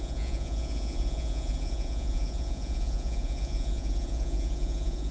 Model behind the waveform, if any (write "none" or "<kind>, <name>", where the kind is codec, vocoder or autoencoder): vocoder, Vocos